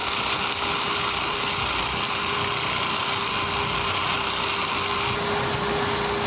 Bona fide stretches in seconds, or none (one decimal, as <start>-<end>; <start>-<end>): 0.0-6.3